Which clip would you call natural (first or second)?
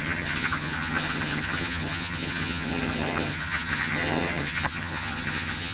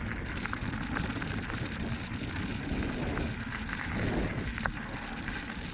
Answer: second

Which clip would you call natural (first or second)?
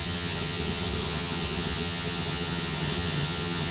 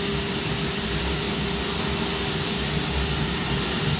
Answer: second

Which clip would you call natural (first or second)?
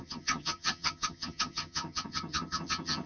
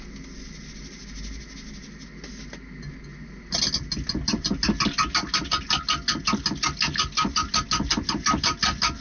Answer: second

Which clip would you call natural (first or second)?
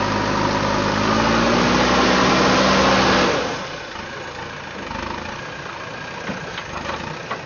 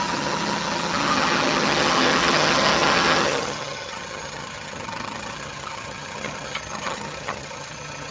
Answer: first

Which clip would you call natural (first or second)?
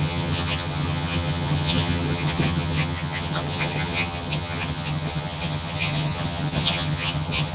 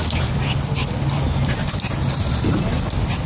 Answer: second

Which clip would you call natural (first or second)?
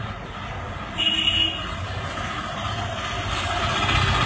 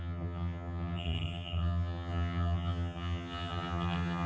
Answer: first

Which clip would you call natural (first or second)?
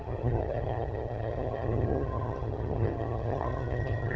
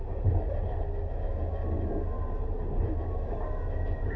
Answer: second